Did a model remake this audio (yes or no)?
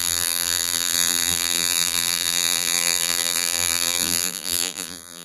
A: yes